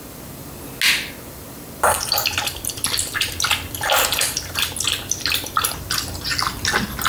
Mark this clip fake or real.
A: real